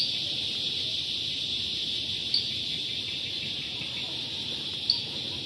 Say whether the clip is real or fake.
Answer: real